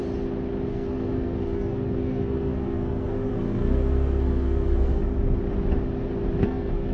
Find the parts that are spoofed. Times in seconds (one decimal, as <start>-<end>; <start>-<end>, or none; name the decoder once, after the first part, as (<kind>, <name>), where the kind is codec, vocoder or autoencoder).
0.7-5.0 (codec, SNAC); 6.4-6.9